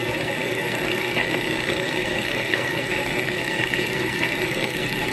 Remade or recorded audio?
remade